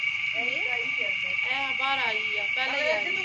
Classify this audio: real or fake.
real